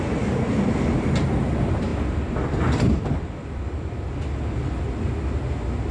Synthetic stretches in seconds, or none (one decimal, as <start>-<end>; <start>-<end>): 1.9-4.0